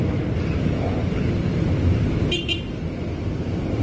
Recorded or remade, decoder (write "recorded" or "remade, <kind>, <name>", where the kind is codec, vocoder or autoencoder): recorded